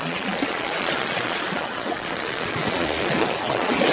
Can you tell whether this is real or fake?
fake